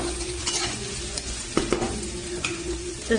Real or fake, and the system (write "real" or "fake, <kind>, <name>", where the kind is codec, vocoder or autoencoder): fake, vocoder, Vocos